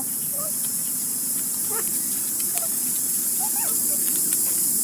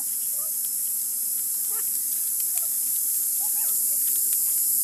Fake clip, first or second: first